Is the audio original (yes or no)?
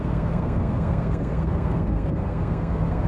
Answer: no